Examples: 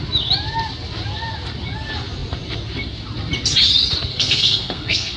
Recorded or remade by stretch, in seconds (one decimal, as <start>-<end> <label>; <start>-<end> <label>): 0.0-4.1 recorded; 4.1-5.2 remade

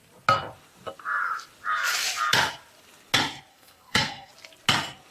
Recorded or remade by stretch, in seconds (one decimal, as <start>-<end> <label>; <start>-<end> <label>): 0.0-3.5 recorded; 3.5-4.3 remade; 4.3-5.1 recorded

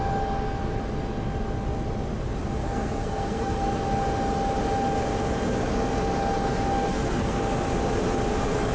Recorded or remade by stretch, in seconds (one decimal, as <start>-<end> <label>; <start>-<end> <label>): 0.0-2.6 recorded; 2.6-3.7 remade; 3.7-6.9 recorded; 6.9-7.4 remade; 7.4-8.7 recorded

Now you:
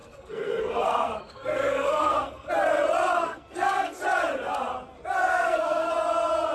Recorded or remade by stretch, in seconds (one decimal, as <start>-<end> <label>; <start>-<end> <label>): 0.0-2.5 remade; 2.5-3.2 recorded; 3.2-4.0 remade; 4.0-5.3 recorded; 5.3-5.9 remade; 5.9-6.5 recorded